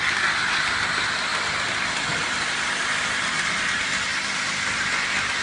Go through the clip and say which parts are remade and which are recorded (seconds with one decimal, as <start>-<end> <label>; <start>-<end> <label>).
0.0-5.4 recorded

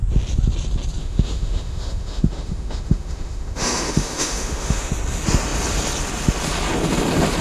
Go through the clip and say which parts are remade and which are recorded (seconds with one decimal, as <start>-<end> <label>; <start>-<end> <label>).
0.0-1.0 recorded; 1.0-4.9 remade; 4.9-7.4 recorded

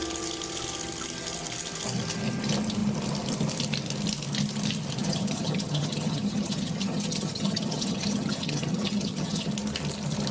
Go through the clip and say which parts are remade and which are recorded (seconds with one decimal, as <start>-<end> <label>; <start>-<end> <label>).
0.0-5.0 recorded; 5.0-9.5 remade; 9.5-10.3 recorded

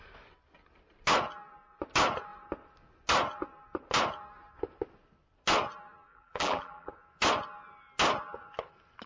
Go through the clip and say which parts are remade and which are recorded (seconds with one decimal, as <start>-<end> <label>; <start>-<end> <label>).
0.0-6.1 recorded; 6.1-6.9 remade; 6.9-9.1 recorded

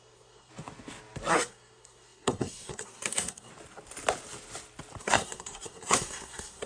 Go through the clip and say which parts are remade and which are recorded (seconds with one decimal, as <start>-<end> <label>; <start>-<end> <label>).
0.0-0.5 remade; 0.5-1.3 recorded; 1.3-3.5 remade; 3.5-5.0 recorded; 5.0-6.7 remade

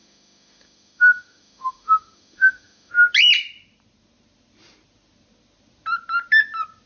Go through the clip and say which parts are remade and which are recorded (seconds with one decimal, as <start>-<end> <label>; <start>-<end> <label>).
0.0-2.9 remade; 2.9-6.9 recorded

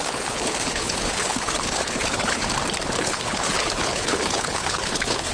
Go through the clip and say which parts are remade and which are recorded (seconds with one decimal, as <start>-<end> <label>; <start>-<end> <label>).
0.0-2.4 remade; 2.4-3.0 recorded; 3.0-5.3 remade

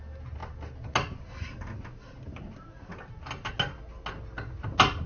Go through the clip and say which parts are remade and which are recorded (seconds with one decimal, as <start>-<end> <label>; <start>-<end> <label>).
0.0-5.1 recorded